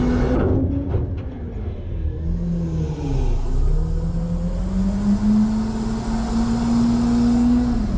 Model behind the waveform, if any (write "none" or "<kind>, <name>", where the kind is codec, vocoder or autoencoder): none